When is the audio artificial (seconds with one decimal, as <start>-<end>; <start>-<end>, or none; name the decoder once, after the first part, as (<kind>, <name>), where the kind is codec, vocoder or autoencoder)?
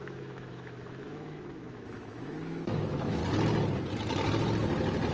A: 0.0-3.2 (autoencoder, DAC-VAE)